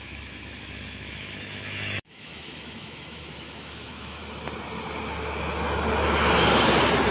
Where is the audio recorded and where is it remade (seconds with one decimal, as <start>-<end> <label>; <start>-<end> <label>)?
0.0-4.2 remade; 4.2-7.1 recorded